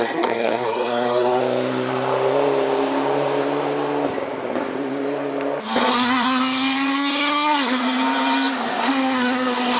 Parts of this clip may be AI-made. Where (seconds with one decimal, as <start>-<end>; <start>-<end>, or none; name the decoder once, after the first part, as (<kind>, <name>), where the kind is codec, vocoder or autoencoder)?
0.0-1.4 (codec, SNAC); 5.9-7.8; 8.8-9.8